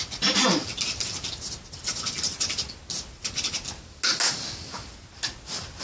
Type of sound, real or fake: real